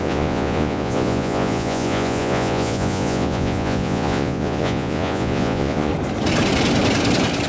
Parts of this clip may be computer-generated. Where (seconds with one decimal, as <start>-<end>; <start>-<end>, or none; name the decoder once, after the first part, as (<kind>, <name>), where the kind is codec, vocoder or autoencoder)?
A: 0.0-5.9 (vocoder, Vocos)